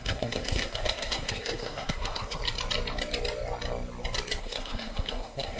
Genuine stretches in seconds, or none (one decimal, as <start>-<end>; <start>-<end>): 2.4-4.4